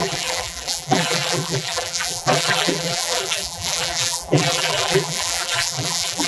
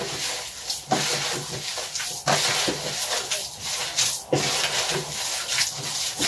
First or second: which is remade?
first